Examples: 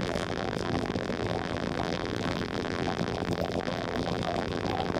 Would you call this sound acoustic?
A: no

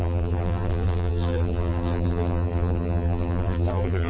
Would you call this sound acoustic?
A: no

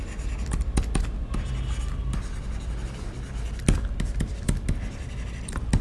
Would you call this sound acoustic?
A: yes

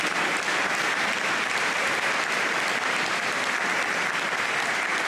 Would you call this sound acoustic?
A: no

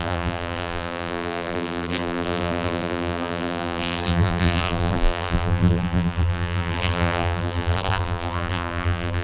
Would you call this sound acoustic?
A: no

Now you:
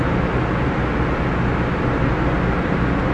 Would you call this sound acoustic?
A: yes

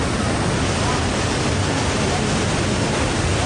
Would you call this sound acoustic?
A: yes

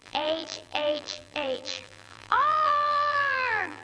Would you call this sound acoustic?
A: no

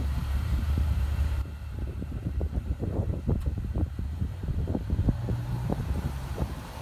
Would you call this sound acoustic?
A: no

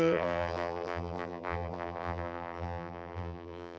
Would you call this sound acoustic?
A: no